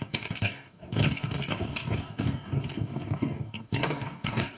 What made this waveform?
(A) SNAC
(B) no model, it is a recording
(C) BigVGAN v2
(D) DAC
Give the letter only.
D